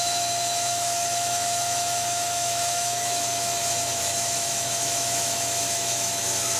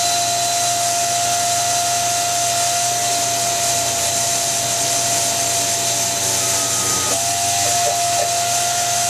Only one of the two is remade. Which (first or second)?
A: first